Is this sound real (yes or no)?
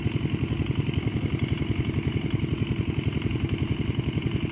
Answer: yes